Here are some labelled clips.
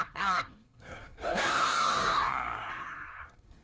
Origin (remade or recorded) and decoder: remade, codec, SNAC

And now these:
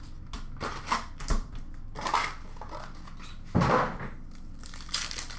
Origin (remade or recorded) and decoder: recorded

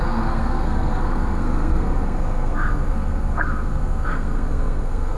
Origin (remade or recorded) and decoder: remade, codec, SNAC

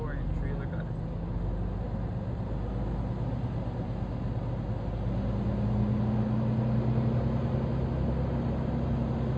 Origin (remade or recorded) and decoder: recorded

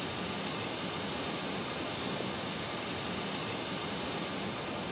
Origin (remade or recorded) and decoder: recorded